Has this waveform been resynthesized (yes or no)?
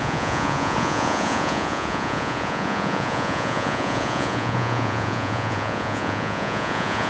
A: yes